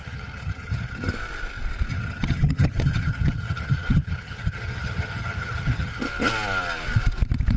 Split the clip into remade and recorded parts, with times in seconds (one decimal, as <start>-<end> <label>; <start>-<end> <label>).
0.0-1.1 remade; 1.1-1.9 recorded; 1.9-6.0 remade; 6.0-7.6 recorded